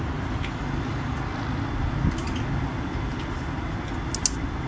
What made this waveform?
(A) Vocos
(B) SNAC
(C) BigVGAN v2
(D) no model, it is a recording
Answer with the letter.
D